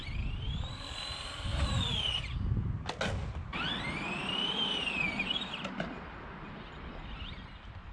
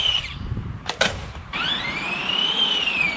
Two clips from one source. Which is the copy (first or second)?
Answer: second